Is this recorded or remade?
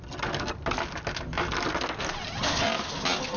recorded